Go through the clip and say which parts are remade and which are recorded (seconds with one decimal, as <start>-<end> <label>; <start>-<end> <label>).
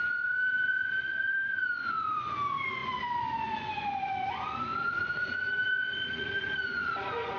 0.0-7.4 remade